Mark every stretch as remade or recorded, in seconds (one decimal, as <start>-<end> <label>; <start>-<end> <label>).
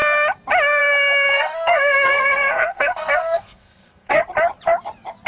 0.0-1.3 recorded; 1.3-4.2 remade; 4.2-5.3 recorded